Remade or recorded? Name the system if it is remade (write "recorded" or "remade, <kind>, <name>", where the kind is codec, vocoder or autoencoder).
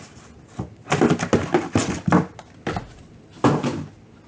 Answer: recorded